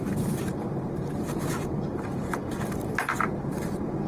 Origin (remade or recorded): remade